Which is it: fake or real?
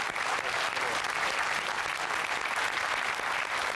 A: real